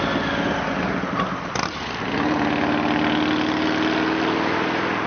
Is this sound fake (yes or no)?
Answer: no